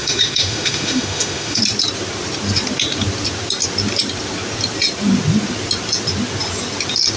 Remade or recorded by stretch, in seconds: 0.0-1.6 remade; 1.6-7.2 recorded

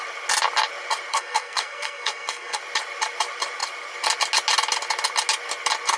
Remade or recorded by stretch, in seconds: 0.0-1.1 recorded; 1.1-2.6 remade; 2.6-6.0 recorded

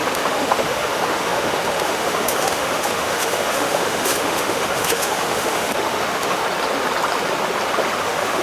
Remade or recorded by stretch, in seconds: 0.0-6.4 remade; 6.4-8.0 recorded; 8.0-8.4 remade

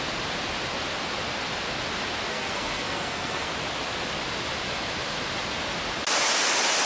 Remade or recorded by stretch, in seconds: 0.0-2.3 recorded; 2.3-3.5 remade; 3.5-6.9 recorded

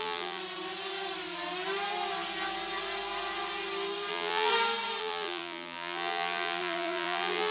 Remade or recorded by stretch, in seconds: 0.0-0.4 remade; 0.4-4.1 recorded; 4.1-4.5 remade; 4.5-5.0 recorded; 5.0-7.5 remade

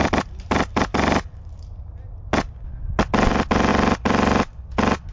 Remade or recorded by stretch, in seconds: 0.0-5.1 recorded